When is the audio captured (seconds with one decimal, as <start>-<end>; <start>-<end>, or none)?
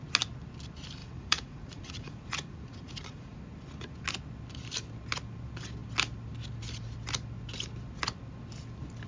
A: 0.0-1.0; 3.4-9.1